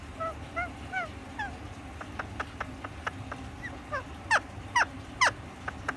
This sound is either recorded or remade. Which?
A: recorded